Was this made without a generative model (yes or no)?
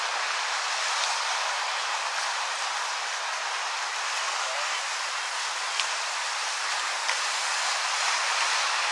yes